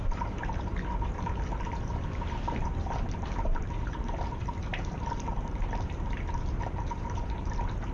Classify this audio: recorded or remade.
remade